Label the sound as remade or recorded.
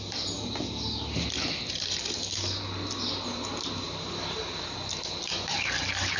recorded